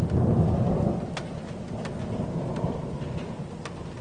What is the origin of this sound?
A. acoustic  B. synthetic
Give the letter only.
A